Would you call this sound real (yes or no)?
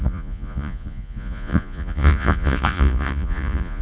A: no